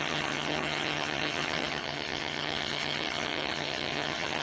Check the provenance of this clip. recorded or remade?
remade